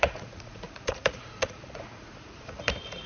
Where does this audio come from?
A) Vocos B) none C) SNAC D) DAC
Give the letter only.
A